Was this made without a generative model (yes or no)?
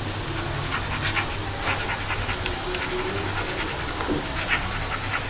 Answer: yes